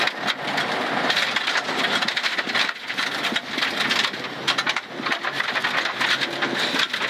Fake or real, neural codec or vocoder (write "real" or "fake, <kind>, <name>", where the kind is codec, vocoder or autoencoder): real